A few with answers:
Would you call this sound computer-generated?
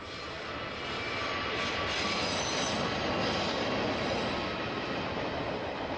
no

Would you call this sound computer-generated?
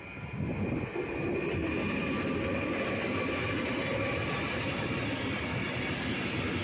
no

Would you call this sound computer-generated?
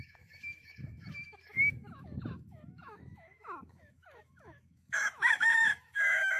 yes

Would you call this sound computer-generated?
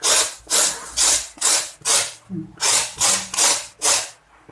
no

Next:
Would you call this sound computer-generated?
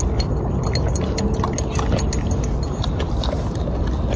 no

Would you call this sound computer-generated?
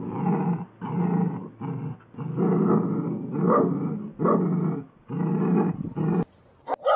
no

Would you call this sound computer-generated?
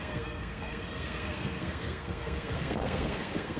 yes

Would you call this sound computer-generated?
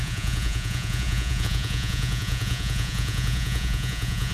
yes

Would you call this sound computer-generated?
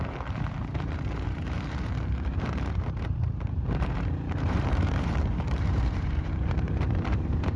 yes